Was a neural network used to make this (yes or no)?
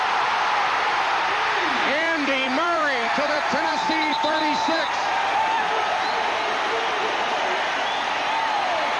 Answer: yes